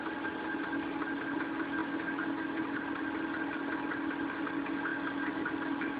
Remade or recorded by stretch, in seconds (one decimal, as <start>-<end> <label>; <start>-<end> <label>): 0.0-6.0 recorded